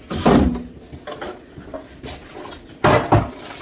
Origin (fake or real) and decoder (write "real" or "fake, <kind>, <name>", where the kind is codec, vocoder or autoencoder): real